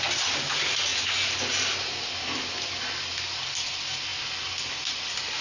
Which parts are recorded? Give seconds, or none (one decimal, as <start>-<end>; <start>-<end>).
0.0-5.4